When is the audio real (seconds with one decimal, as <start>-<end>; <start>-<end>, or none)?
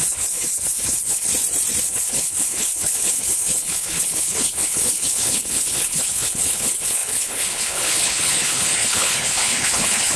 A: 1.3-1.8